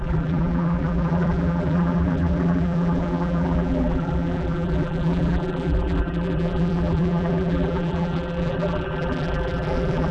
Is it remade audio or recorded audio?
remade